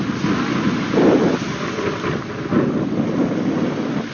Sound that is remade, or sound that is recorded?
recorded